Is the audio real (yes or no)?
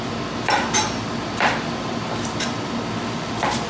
yes